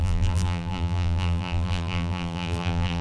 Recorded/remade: remade